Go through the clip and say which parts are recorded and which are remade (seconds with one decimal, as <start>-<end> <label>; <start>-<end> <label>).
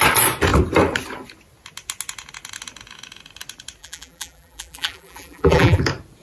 0.0-3.8 recorded; 3.8-5.8 remade; 5.8-6.2 recorded